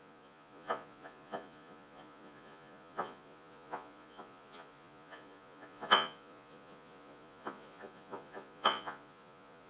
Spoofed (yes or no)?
yes